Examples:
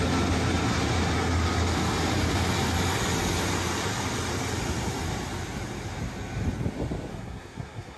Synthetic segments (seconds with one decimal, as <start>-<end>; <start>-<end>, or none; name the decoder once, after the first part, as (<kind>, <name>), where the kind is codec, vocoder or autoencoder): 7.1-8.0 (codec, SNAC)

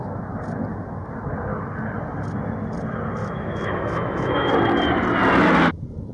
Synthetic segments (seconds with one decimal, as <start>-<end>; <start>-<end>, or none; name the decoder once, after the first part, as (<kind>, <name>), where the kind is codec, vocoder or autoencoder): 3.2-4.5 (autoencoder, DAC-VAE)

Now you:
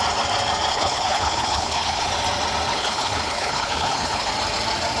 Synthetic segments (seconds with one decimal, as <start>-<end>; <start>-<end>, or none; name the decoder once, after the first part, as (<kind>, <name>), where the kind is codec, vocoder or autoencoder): 0.7-2.1 (codec, HILCodec); 2.7-4.3